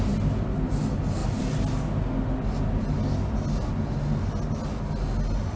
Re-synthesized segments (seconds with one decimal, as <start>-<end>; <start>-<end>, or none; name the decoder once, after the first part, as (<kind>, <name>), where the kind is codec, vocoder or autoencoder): none